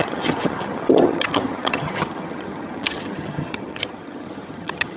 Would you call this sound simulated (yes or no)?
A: yes